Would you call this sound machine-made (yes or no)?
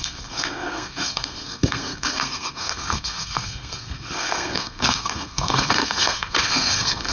yes